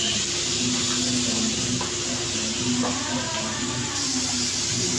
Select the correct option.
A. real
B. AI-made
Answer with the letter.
A